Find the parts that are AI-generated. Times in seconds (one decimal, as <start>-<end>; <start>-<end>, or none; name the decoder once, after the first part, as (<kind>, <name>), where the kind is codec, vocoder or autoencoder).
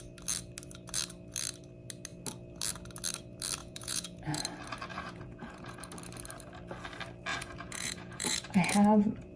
3.6-4.4 (vocoder, Vocos); 4.9-5.8; 7.3-9.4